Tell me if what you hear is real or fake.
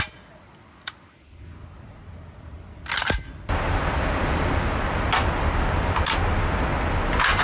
real